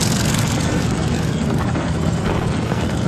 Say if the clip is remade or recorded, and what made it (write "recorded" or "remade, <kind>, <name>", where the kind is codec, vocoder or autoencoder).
remade, codec, SNAC